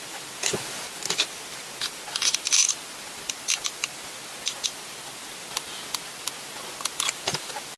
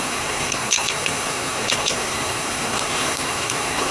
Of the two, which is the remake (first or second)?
second